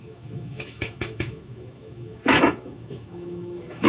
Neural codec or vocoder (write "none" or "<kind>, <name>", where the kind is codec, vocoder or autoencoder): autoencoder, DAC-VAE